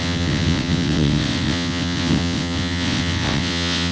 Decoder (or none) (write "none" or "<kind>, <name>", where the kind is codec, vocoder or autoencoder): vocoder, WaveNeXt